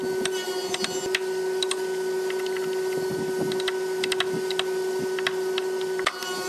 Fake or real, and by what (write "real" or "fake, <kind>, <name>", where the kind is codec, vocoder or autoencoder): real